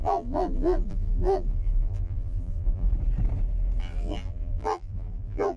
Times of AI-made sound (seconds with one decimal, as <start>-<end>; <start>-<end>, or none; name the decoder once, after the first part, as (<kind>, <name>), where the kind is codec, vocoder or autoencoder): 0.0-2.9 (vocoder, BigVGAN v2); 3.8-5.6